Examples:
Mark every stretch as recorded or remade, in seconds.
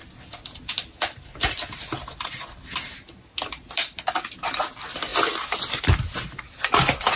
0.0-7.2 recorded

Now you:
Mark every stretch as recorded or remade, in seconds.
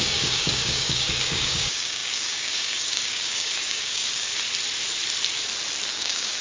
0.0-4.3 remade; 4.3-5.9 recorded; 5.9-6.4 remade